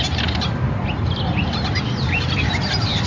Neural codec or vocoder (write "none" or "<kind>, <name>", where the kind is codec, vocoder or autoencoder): vocoder, BigVGAN v2